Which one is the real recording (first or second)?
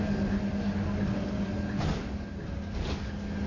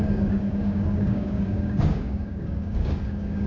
first